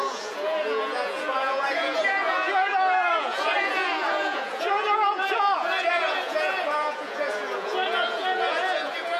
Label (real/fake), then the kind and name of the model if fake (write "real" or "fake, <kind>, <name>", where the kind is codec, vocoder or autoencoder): fake, vocoder, Vocos